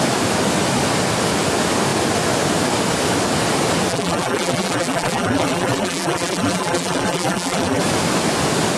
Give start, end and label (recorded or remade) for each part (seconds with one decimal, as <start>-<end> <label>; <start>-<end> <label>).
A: 0.0-3.9 recorded; 3.9-7.8 remade; 7.8-8.8 recorded